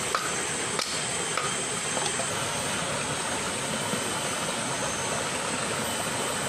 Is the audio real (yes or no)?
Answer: yes